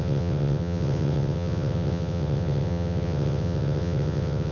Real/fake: fake